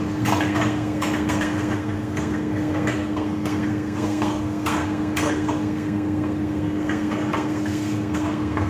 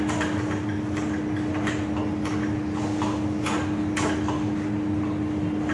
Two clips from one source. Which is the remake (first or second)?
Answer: first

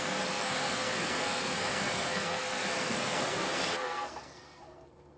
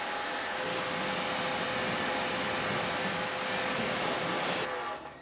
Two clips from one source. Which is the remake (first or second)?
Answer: first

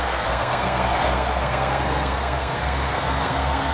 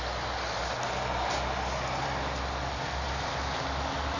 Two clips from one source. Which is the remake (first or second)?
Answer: first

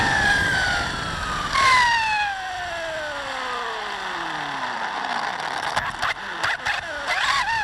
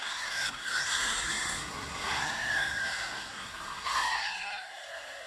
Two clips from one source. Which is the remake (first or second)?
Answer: second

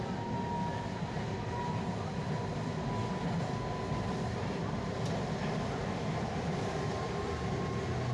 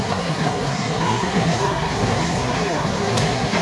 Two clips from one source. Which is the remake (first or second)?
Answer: second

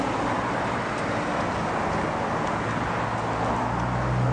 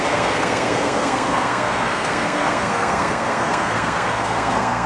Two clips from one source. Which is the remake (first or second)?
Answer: second